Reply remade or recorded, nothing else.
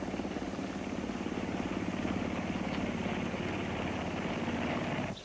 recorded